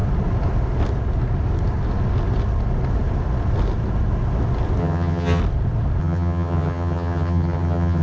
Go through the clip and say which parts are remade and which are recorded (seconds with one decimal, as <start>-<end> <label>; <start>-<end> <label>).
0.0-4.8 recorded; 4.8-5.4 remade; 5.4-6.0 recorded; 6.0-8.0 remade